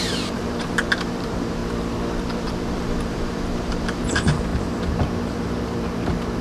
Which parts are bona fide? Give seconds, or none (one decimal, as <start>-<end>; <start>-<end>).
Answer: 1.6-2.2